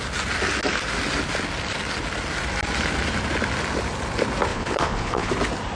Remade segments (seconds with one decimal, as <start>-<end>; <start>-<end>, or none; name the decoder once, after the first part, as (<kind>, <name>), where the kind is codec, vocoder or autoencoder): 4.5-5.3 (vocoder, Vocos)